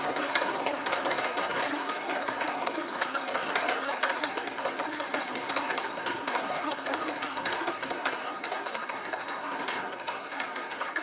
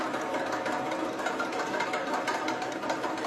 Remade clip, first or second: first